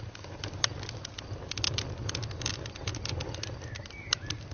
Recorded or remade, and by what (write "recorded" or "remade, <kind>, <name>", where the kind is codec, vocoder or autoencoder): recorded